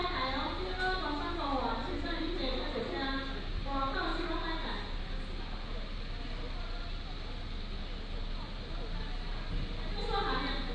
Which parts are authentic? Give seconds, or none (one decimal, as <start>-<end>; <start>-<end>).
0.0-10.7